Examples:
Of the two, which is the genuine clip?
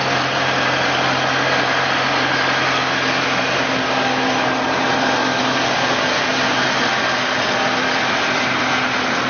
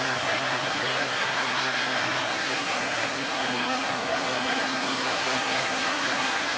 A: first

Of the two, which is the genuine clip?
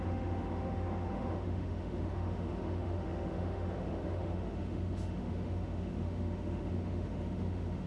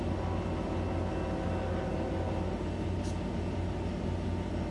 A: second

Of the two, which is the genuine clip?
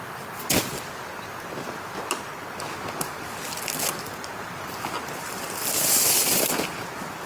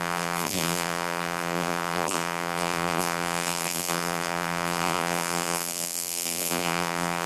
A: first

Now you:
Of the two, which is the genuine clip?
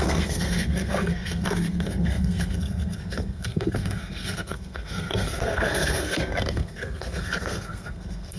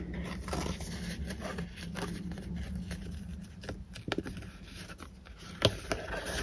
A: second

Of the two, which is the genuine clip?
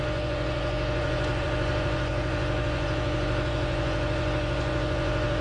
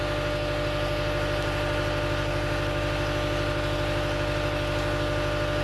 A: second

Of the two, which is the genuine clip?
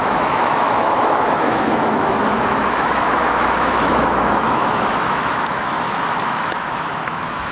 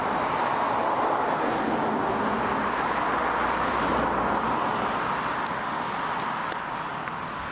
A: second